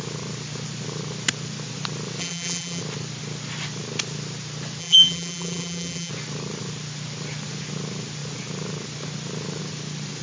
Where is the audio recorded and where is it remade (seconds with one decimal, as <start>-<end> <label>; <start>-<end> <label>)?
0.0-2.2 recorded; 2.2-2.8 remade; 2.8-4.8 recorded; 4.8-6.1 remade; 6.1-10.2 recorded

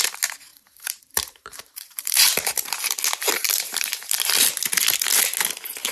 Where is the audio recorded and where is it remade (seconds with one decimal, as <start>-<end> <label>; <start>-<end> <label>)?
0.0-0.5 recorded; 0.5-3.0 remade; 3.0-3.4 recorded; 3.4-4.1 remade; 4.1-5.9 recorded

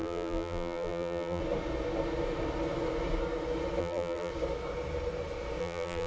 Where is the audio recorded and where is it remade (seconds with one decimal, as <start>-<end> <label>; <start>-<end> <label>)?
0.0-1.4 remade; 1.4-3.8 recorded; 3.8-4.3 remade; 4.3-5.6 recorded; 5.6-6.1 remade

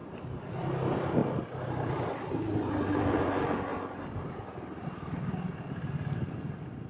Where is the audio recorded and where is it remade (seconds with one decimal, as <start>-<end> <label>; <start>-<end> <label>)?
0.0-0.7 remade; 0.7-1.2 recorded; 1.2-3.2 remade; 3.2-3.7 recorded; 3.7-5.5 remade; 5.5-6.9 recorded

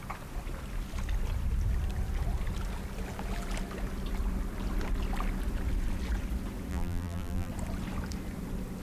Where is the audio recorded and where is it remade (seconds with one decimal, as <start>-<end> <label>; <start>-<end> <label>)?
0.0-6.7 recorded; 6.7-7.5 remade; 7.5-8.8 recorded